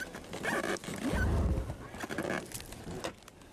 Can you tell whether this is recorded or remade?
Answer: recorded